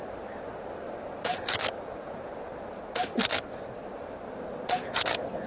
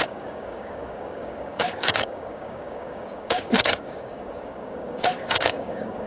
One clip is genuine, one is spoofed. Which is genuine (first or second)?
first